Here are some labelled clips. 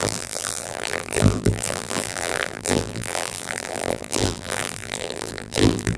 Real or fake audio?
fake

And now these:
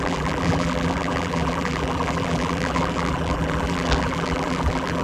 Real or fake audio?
fake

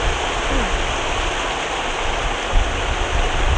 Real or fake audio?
real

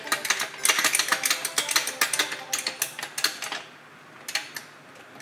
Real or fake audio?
real